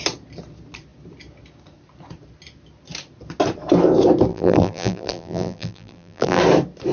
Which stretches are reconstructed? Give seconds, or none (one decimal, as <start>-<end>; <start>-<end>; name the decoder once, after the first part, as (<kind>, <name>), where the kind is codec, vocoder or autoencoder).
4.3-6.4 (vocoder, BigVGAN v2)